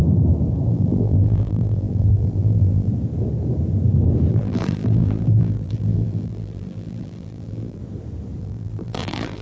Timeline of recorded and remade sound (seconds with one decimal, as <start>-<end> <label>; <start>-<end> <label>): 0.0-0.7 recorded; 0.7-2.9 remade; 2.9-4.3 recorded; 4.3-7.8 remade; 7.8-8.4 recorded; 8.4-9.4 remade